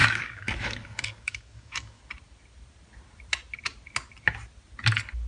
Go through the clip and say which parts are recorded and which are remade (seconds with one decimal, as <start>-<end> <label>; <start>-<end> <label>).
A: 0.0-2.0 remade; 2.0-5.3 recorded